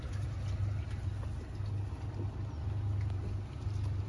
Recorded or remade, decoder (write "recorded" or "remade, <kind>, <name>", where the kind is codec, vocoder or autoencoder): recorded